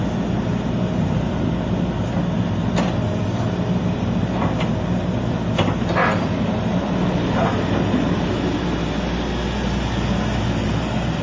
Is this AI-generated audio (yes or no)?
no